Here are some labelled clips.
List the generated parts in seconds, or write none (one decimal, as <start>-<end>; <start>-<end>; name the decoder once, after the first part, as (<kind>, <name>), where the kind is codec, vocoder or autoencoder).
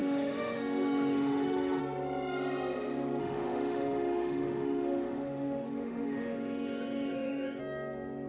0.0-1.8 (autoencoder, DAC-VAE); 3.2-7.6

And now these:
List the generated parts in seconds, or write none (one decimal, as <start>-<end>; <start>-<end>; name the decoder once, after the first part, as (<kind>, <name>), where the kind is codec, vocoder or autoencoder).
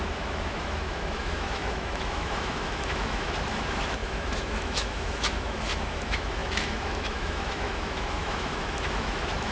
0.0-9.5 (autoencoder, DAC-VAE)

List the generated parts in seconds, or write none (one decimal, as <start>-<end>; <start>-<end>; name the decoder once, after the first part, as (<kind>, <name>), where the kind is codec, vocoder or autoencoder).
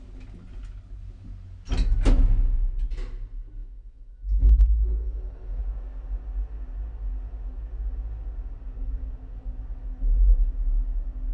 3.6-5.6 (autoencoder, DAC-VAE)